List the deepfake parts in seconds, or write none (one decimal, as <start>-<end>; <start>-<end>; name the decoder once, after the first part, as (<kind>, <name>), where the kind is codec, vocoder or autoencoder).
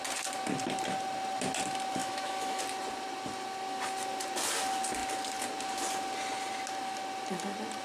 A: 2.0-2.6 (autoencoder, DAC-VAE)